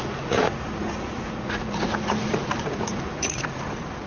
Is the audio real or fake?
fake